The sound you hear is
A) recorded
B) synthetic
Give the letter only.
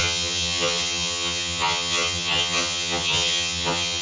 B